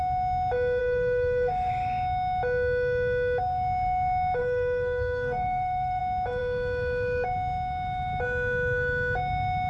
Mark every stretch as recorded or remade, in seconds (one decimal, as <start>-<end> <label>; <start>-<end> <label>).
0.0-0.8 recorded; 0.8-1.7 remade; 1.7-4.4 recorded; 4.4-6.0 remade; 6.0-9.7 recorded